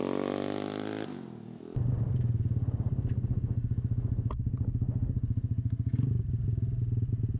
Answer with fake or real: real